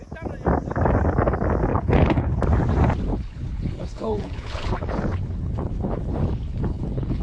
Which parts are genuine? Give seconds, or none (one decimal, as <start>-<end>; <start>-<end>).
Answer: 0.0-1.7; 2.4-3.1